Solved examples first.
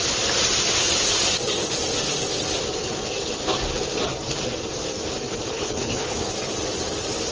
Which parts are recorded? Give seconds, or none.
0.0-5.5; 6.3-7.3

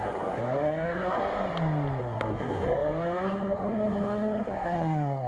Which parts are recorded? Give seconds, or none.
1.2-2.0

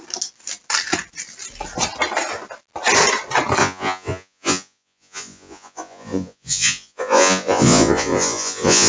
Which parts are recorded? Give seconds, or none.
0.0-3.6

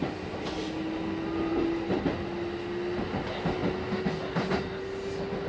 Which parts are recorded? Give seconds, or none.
0.0-1.5; 2.0-5.5